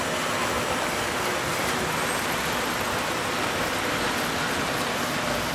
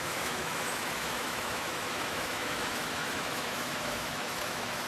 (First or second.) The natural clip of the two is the first